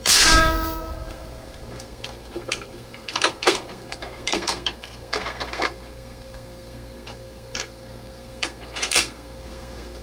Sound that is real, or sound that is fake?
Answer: fake